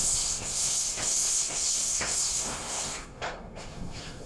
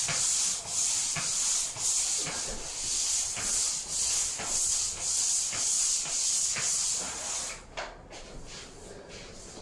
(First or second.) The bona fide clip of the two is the second